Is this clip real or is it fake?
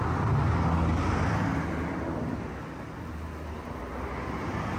real